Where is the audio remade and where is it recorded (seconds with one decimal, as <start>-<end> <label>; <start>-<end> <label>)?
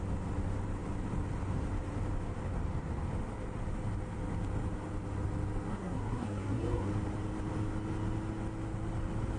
0.0-5.7 recorded; 5.7-6.9 remade; 6.9-9.4 recorded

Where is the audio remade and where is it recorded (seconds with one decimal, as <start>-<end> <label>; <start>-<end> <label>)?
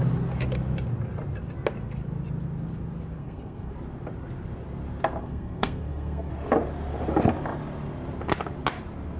0.0-3.2 recorded; 3.2-3.7 remade; 3.7-5.2 recorded; 5.2-6.3 remade; 6.3-9.2 recorded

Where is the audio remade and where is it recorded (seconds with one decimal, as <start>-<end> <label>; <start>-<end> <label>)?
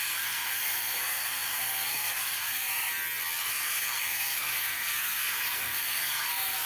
0.0-2.9 remade; 2.9-3.4 recorded; 3.4-6.7 remade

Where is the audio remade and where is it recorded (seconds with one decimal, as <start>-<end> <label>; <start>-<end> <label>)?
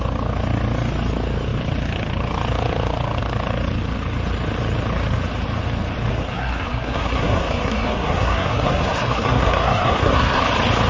0.0-6.1 recorded; 6.1-10.4 remade; 10.4-10.9 recorded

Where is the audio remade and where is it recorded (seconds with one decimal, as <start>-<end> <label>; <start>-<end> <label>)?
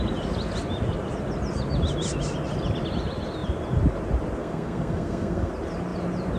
0.0-4.4 recorded; 4.4-5.5 remade; 5.5-6.4 recorded